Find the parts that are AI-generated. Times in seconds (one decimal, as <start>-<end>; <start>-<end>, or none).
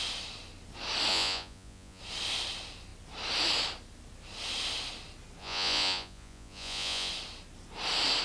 1.1-2.0; 5.4-7.1